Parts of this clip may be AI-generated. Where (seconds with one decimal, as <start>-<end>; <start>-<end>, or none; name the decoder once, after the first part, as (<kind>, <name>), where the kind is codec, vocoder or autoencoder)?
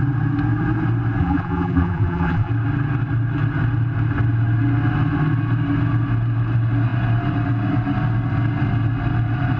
1.2-2.5 (vocoder, BigVGAN v2)